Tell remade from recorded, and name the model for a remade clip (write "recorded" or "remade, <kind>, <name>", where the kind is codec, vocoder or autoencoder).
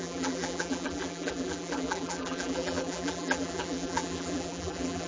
remade, vocoder, BigVGAN v2